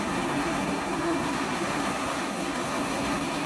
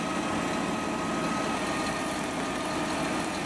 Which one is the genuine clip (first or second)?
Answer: second